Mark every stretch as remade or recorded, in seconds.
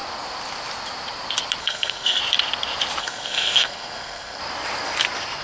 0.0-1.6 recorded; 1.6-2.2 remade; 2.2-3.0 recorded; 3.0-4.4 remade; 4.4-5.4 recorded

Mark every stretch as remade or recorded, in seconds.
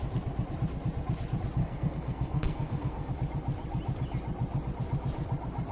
0.0-1.6 recorded; 1.6-3.1 remade; 3.1-5.7 recorded